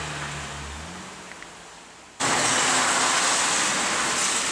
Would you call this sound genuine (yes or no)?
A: yes